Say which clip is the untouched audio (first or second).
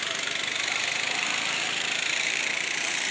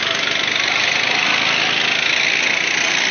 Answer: second